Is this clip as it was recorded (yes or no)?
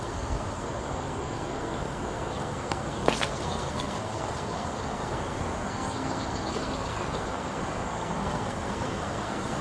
no